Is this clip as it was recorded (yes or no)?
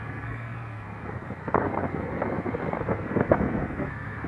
no